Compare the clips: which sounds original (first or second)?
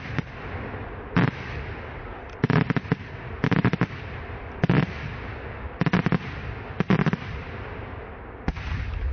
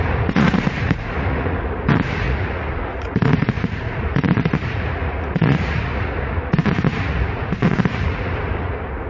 first